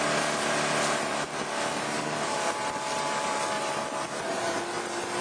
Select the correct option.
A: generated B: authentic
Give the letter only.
B